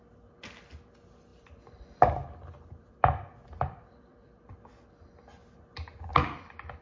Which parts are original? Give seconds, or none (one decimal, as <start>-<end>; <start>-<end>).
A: 0.0-1.3; 4.7-6.8